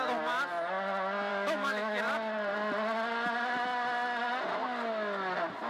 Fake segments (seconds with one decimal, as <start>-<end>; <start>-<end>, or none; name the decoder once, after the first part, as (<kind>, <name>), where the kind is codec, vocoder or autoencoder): 1.3-2.0 (autoencoder, DAC-VAE)